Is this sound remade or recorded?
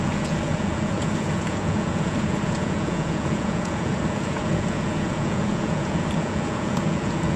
remade